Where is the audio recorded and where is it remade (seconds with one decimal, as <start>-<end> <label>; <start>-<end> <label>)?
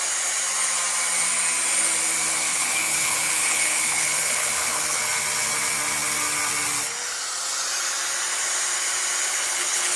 0.0-2.5 recorded; 2.5-5.0 remade; 5.0-9.3 recorded; 9.3-10.0 remade